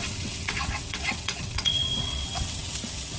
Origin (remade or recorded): remade